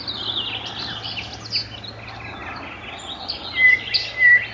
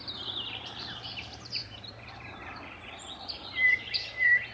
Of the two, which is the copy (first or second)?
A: second